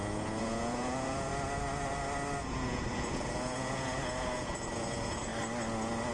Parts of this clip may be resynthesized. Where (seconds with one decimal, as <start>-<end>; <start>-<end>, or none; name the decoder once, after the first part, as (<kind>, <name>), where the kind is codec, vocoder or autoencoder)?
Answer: 0.0-1.3 (vocoder, Vocos); 2.4-5.3